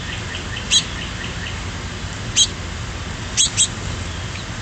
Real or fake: real